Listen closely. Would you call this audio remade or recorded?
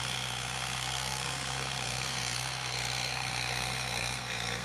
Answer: remade